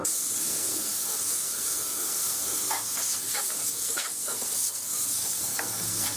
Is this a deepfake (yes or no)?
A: yes